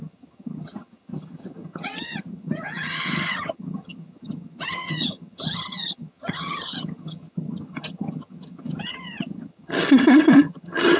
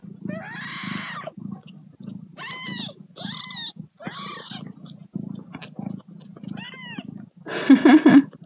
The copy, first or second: first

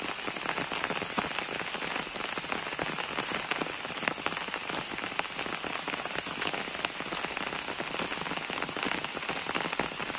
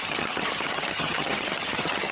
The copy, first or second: second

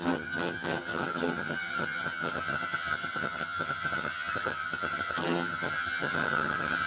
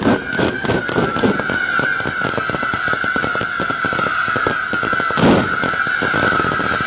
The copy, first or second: first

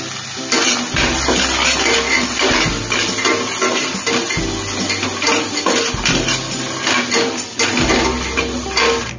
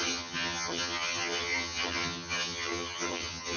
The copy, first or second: second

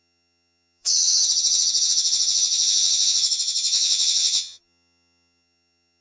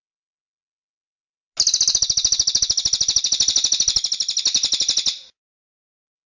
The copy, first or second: first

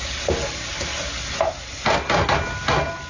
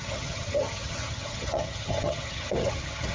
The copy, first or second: second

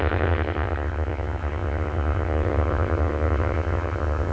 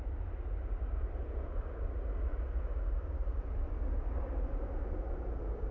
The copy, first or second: first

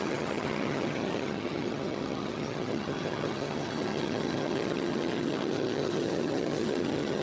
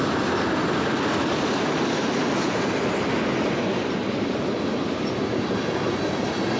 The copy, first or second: first